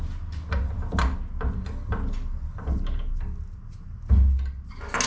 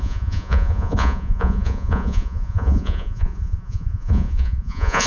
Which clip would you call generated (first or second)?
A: second